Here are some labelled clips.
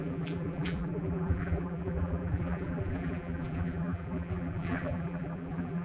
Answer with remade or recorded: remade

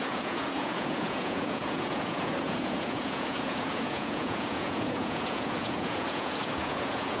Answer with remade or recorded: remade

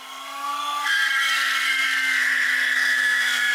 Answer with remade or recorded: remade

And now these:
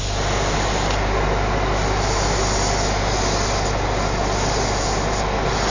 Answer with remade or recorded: recorded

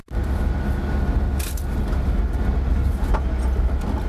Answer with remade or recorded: recorded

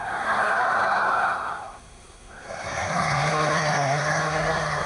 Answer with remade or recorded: remade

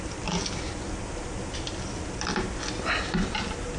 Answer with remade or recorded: recorded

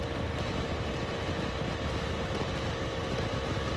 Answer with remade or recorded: recorded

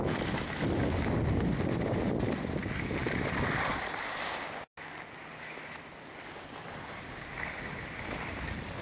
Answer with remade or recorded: recorded